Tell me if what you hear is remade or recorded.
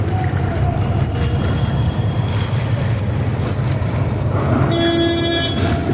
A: recorded